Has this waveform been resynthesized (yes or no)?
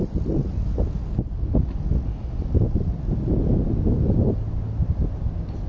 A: no